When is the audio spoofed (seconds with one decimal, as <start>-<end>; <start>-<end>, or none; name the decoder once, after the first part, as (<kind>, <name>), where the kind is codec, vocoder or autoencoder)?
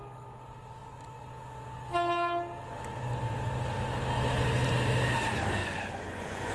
5.6-6.5 (vocoder, Vocos)